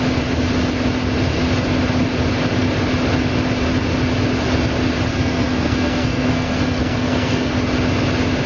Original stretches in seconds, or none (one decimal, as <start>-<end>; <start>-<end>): 0.0-5.1; 7.5-8.5